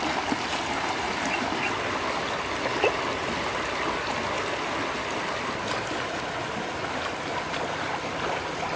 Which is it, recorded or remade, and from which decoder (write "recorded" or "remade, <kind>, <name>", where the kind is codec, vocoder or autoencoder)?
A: recorded